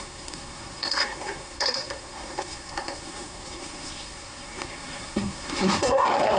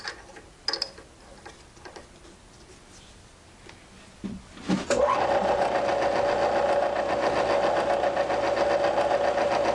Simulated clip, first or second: first